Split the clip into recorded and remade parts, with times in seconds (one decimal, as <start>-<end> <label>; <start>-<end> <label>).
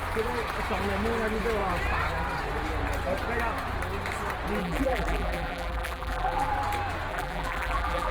0.0-4.6 recorded; 4.6-6.5 remade; 6.5-7.1 recorded; 7.1-8.1 remade